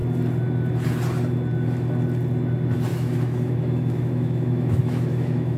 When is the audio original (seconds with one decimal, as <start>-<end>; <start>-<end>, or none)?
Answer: 0.0-2.9